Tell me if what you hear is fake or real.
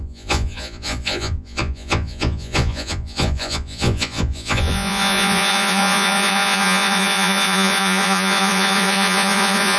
fake